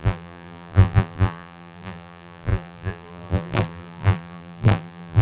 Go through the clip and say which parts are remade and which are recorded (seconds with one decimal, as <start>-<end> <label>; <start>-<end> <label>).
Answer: 0.0-5.2 remade